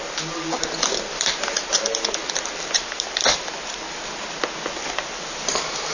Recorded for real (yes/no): yes